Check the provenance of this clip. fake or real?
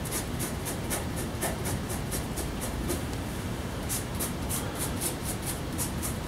fake